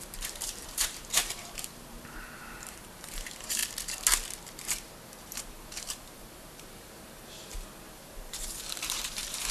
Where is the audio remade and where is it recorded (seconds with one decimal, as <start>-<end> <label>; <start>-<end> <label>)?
0.0-3.6 remade; 3.6-5.2 recorded; 5.2-9.5 remade